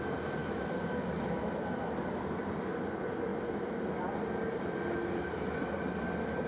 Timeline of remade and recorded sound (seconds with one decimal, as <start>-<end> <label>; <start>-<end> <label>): 0.0-0.4 recorded; 0.4-1.4 remade; 1.4-6.5 recorded